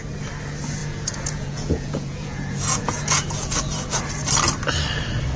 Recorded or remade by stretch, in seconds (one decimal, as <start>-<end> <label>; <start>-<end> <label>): 0.0-0.8 recorded; 0.8-4.0 remade; 4.0-5.4 recorded